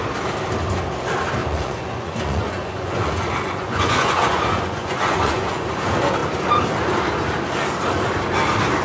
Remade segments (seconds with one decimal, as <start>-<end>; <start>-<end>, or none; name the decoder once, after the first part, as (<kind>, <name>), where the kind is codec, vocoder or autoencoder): 1.4-5.8 (vocoder, Vocos)